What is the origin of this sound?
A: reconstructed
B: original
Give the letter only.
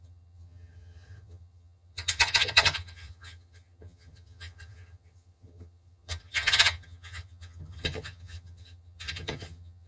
A